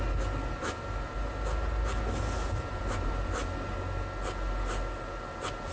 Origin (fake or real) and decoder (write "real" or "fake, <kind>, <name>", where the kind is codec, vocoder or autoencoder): real